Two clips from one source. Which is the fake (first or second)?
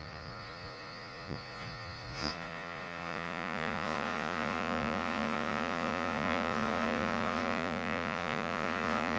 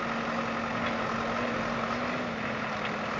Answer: first